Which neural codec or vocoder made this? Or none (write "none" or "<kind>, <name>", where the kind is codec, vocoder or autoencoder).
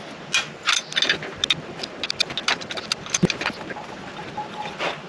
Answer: none